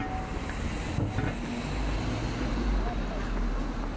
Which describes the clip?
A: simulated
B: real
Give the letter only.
B